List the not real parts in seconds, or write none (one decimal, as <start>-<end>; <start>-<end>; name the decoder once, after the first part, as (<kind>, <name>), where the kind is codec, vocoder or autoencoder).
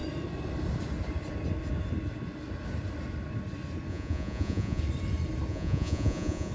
3.9-4.8 (vocoder, Vocos); 5.5-6.5